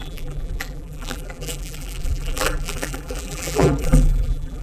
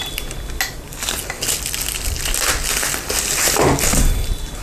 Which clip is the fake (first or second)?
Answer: first